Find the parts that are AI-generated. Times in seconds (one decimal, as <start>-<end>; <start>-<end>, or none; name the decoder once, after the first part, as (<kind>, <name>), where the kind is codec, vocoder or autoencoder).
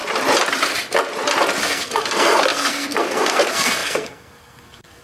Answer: 1.6-5.0 (codec, SNAC)